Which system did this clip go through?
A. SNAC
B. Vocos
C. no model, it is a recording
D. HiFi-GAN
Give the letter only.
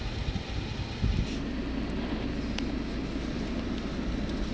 C